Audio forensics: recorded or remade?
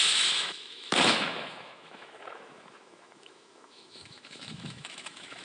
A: remade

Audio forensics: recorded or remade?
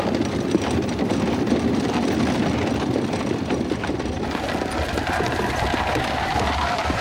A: remade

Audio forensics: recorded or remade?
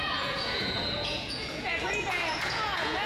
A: remade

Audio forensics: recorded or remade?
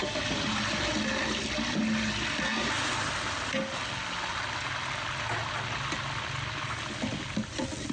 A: recorded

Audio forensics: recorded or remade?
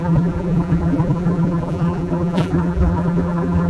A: remade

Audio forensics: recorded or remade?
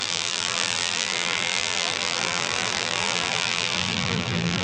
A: remade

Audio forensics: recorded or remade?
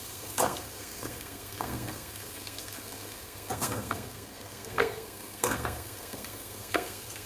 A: remade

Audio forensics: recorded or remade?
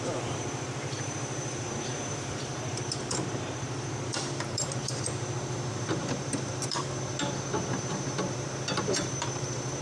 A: remade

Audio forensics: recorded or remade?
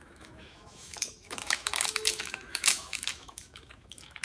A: remade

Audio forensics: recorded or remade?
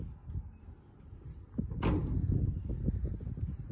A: recorded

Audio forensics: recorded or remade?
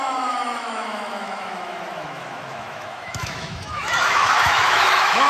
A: remade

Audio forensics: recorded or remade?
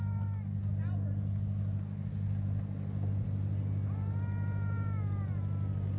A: recorded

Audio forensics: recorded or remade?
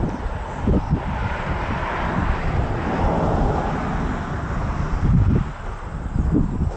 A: recorded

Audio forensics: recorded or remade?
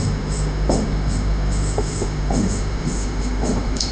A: remade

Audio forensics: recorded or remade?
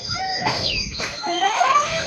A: remade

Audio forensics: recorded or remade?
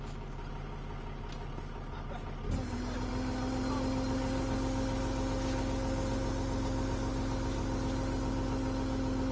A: recorded